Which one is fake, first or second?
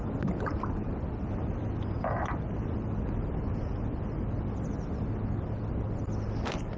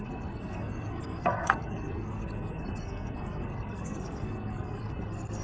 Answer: second